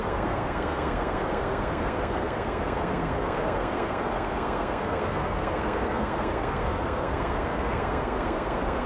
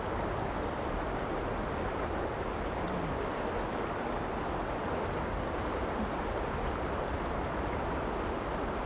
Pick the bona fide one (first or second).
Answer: second